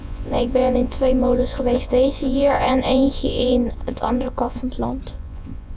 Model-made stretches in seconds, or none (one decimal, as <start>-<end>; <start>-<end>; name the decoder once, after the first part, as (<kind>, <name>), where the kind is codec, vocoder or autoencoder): 0.0-4.6 (vocoder, Vocos); 5.1-5.8